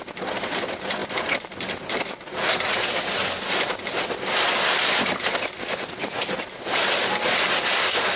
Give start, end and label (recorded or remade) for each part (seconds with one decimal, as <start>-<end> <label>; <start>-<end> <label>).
0.0-8.2 recorded